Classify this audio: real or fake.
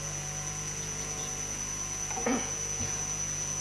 fake